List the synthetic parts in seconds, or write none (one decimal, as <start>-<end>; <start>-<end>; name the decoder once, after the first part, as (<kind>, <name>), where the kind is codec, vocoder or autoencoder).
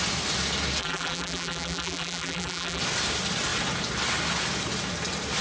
0.8-2.8 (vocoder, BigVGAN v2)